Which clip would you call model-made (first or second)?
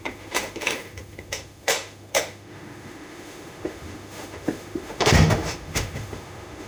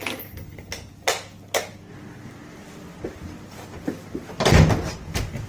first